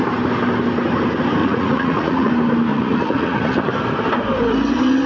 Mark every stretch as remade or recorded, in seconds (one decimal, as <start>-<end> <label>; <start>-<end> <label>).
0.0-1.4 recorded; 1.4-2.3 remade; 2.3-2.7 recorded; 2.7-3.7 remade; 3.7-5.1 recorded